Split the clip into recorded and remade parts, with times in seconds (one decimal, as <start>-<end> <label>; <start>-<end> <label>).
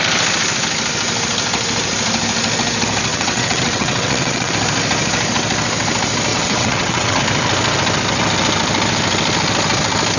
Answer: 0.0-3.1 recorded; 3.1-4.5 remade; 4.5-6.3 recorded; 6.3-7.2 remade; 7.2-10.2 recorded